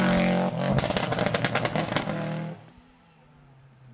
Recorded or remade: recorded